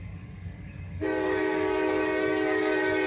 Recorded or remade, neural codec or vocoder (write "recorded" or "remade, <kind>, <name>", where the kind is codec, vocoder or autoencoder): remade, codec, DAC